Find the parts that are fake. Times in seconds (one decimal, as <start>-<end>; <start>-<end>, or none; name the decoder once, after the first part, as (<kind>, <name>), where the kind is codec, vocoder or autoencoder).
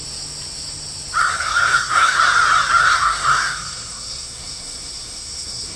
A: 1.2-2.2 (codec, SNAC); 2.8-5.8